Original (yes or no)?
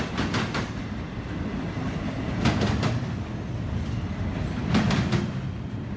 yes